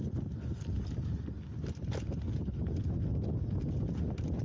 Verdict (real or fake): real